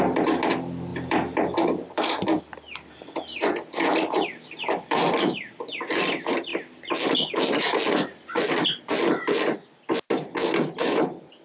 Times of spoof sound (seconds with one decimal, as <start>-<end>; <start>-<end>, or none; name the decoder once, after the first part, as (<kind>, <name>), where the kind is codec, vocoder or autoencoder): 0.9-2.4 (vocoder, BigVGAN v2); 3.9-5.1